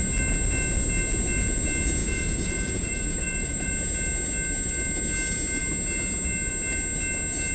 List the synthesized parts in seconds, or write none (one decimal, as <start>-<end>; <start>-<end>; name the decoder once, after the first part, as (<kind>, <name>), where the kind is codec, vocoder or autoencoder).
2.0-3.7 (vocoder, Vocos)